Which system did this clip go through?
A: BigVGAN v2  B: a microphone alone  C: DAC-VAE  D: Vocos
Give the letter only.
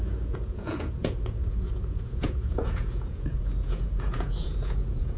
D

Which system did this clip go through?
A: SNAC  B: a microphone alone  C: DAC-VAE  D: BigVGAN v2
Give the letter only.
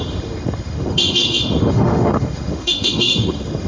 C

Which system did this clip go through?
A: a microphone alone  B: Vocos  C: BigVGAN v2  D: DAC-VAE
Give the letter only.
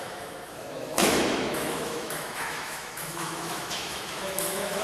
D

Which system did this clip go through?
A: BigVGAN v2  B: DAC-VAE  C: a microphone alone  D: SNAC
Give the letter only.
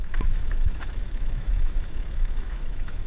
B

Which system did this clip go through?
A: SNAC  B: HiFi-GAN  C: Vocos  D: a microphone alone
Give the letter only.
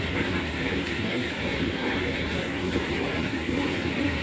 A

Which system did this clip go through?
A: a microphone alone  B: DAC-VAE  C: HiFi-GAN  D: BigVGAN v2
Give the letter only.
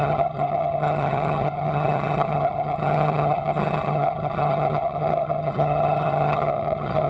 C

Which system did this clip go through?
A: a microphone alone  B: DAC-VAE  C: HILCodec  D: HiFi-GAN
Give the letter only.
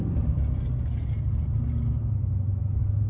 A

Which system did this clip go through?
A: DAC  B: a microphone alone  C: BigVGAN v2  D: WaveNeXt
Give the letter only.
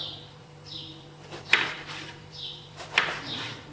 C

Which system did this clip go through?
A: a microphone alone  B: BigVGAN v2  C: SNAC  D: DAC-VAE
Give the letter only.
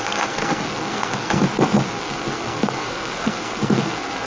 C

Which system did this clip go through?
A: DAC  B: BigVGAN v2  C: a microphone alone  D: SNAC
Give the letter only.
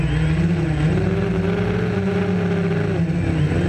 C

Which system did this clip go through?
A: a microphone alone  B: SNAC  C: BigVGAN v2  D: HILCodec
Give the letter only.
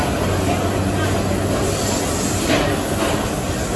A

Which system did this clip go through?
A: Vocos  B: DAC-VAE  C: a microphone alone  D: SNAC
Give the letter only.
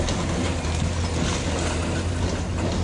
C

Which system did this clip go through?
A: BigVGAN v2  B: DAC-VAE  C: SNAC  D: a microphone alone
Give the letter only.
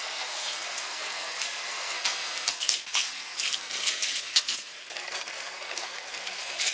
C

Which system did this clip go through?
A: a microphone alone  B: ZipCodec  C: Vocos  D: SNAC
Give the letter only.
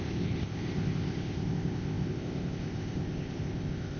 B